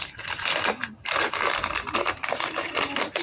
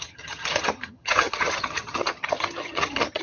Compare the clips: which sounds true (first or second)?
first